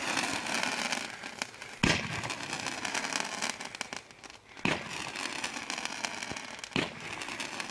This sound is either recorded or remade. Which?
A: recorded